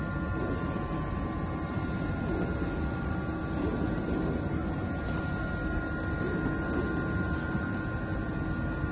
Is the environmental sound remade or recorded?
recorded